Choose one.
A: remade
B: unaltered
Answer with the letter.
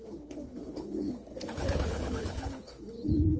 A